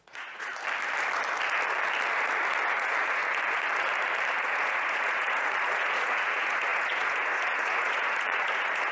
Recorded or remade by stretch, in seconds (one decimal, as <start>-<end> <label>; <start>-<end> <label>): 0.0-0.5 remade; 0.5-2.7 recorded; 2.7-3.2 remade; 3.2-4.4 recorded; 4.4-8.9 remade